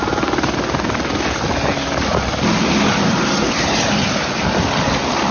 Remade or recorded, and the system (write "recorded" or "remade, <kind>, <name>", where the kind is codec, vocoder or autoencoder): recorded